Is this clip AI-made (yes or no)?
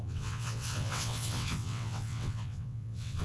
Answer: yes